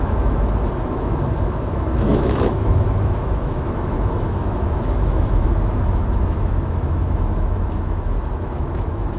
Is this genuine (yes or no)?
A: no